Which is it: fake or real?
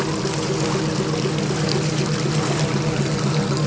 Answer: real